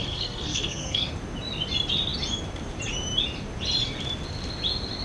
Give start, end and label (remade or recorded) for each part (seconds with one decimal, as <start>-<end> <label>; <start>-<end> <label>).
0.0-1.1 remade; 1.1-5.0 recorded